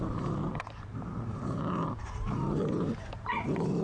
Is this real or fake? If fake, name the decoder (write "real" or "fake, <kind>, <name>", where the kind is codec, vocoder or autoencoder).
fake, vocoder, BigVGAN v2